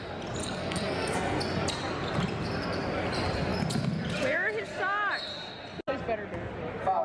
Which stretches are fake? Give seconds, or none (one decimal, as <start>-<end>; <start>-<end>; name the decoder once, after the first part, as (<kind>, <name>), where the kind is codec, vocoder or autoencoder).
0.4-1.4 (codec, SNAC)